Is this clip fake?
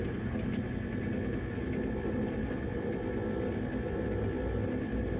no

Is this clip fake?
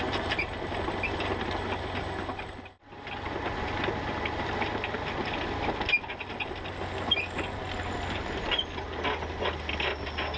no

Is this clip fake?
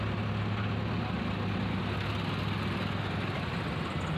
no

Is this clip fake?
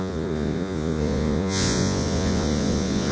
yes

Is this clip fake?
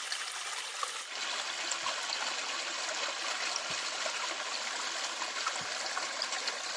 no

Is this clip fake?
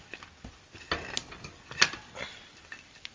no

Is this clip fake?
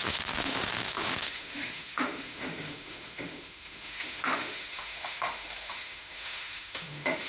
yes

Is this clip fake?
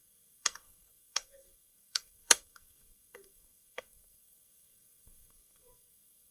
yes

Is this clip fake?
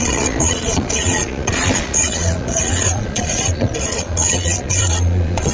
yes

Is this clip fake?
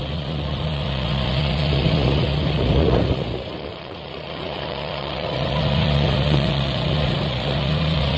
yes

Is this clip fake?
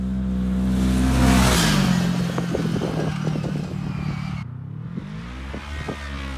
no